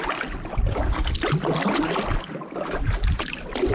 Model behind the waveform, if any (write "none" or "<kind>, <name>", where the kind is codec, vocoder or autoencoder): none